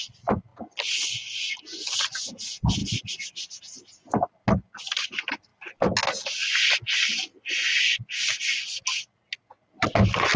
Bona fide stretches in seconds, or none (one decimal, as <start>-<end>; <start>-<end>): 0.0-10.4